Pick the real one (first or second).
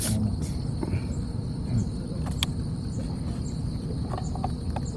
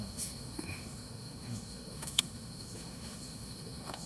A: first